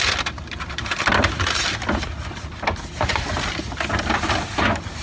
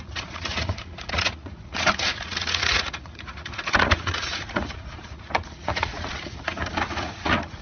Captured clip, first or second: first